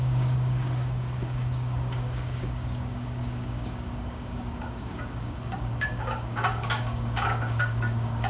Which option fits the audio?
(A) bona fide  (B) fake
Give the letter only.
B